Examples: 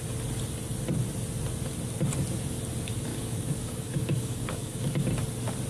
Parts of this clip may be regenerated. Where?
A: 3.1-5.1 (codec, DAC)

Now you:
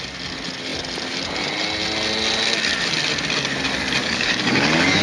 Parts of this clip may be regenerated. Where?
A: 4.0-5.0 (codec, DAC)

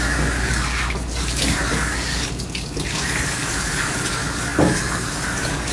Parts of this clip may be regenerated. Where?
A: 0.0-5.7 (codec, DAC)